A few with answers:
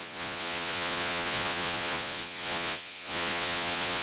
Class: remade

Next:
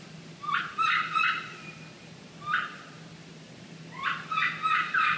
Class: recorded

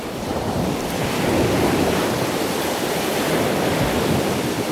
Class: remade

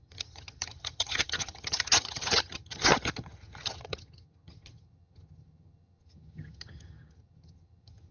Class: remade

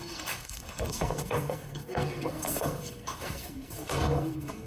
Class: remade